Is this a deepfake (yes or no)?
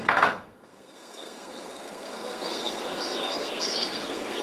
yes